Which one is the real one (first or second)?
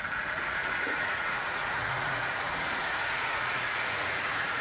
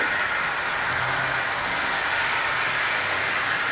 second